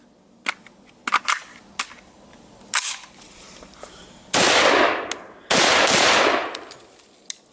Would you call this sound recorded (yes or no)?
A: yes